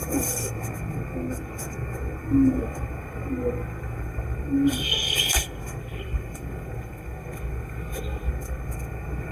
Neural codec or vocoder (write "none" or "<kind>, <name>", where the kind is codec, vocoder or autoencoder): codec, SNAC